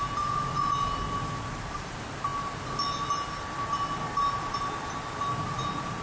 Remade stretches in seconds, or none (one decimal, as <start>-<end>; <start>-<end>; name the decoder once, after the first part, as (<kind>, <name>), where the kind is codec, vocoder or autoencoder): none